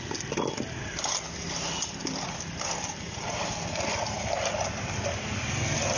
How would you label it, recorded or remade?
recorded